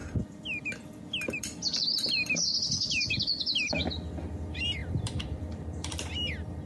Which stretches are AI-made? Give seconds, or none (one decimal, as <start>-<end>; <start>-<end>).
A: 4.8-5.6